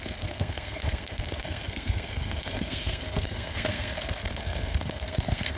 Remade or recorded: remade